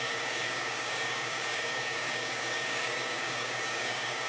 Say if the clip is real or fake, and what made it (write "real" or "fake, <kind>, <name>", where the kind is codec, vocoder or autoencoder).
fake, codec, DAC